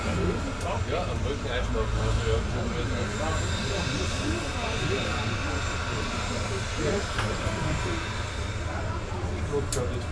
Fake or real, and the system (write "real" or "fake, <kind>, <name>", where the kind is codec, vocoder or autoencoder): real